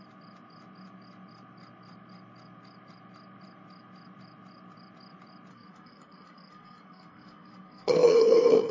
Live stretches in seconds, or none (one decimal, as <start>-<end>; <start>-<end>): 0.0-5.5